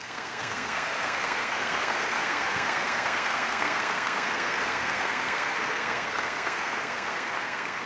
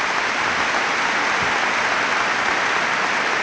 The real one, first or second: second